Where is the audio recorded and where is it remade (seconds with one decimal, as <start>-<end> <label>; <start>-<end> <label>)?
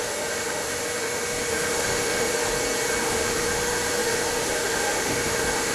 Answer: 0.0-2.3 remade; 2.3-3.0 recorded; 3.0-5.7 remade